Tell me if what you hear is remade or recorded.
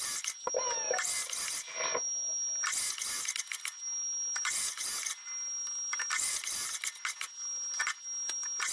recorded